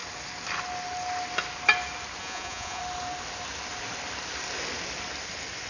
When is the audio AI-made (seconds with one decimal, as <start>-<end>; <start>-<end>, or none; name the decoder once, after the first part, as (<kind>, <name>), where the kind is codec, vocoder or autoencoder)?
2.2-2.8 (vocoder, Vocos)